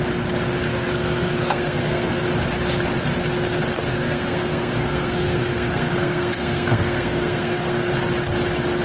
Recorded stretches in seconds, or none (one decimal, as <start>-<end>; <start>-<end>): 0.0-0.7; 2.2-3.9; 7.9-8.8